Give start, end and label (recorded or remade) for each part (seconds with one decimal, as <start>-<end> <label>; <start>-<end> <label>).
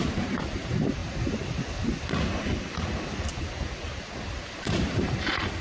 0.0-1.0 remade; 1.0-4.4 recorded; 4.4-5.6 remade